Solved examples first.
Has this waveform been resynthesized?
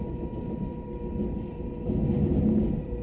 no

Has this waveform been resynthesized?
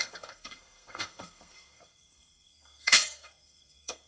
yes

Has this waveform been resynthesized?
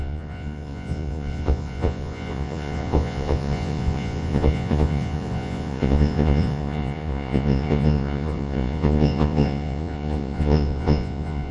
yes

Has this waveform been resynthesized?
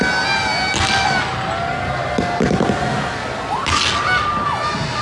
no